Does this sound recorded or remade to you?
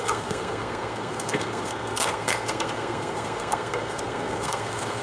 remade